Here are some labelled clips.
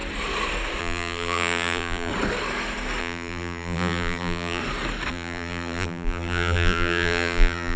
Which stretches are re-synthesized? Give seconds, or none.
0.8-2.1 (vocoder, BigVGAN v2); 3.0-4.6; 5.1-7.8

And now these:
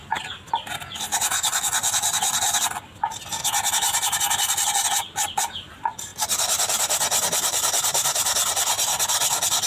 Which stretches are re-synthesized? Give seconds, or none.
6.1-8.7 (vocoder, BigVGAN v2)

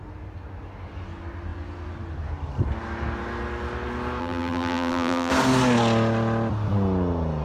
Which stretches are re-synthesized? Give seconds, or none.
4.2-5.3 (vocoder, BigVGAN v2)

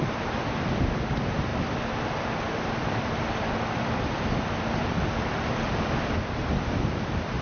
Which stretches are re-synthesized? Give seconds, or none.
0.0-7.4 (vocoder, BigVGAN v2)

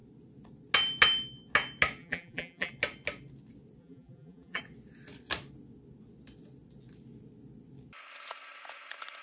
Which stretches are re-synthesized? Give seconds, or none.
2.0-2.7 (vocoder, BigVGAN v2); 3.8-4.6

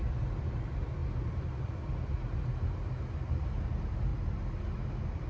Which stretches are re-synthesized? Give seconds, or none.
none

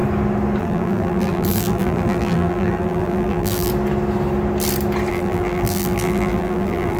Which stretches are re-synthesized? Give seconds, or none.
0.6-3.7 (vocoder, BigVGAN v2); 5.1-7.0